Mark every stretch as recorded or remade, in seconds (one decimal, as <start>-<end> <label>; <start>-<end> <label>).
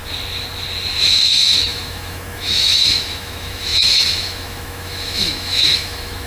0.0-0.9 recorded; 0.9-6.3 remade